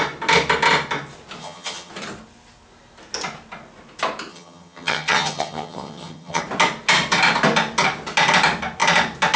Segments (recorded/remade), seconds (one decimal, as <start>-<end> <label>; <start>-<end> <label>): 0.0-1.4 recorded; 1.4-1.9 remade; 1.9-4.3 recorded; 4.3-6.4 remade; 6.4-9.4 recorded